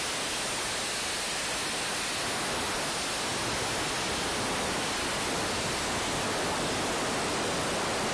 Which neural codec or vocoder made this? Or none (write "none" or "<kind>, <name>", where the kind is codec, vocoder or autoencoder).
none